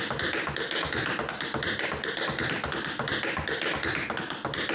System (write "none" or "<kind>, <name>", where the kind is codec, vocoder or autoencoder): none